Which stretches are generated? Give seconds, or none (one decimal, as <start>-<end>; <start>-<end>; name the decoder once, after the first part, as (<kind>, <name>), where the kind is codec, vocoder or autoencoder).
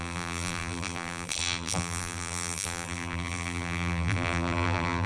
0.0-5.1 (vocoder, BigVGAN v2)